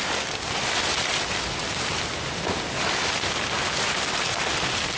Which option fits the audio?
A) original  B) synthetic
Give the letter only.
A